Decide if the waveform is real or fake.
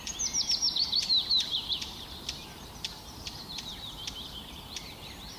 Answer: fake